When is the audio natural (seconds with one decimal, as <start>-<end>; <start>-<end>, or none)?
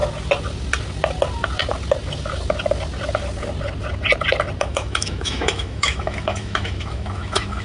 0.0-4.6